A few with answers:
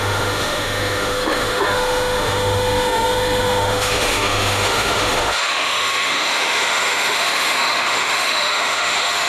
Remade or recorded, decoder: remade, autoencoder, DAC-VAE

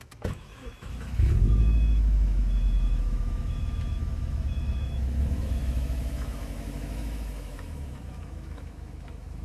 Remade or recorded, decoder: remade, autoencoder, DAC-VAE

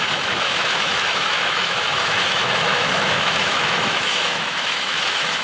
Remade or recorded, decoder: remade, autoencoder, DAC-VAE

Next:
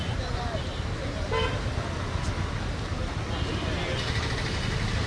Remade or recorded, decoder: recorded